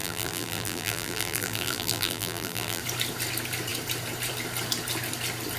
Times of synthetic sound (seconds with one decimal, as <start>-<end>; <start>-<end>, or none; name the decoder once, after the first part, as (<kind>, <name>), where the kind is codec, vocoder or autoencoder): 0.0-2.8 (vocoder, BigVGAN v2)